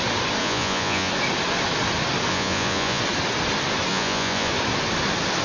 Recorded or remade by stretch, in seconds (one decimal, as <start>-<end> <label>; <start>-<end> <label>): 0.0-0.4 recorded; 0.4-1.1 remade; 1.1-2.3 recorded; 2.3-3.0 remade; 3.0-3.9 recorded; 3.9-4.5 remade; 4.5-5.4 recorded